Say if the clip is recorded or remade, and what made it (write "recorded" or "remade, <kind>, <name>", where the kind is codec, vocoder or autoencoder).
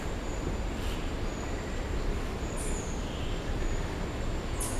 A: recorded